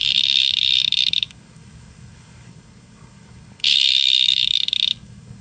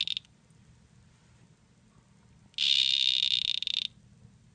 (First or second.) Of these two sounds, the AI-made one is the first